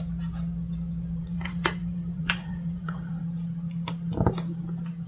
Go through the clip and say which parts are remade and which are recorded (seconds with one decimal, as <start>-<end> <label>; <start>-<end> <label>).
0.0-1.2 recorded; 1.2-3.2 remade; 3.2-5.1 recorded